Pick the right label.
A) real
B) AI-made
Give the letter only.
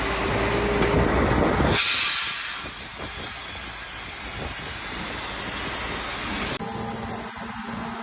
A